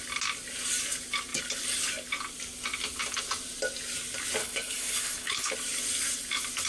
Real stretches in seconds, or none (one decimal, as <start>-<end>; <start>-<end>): 0.0-4.4; 5.5-6.7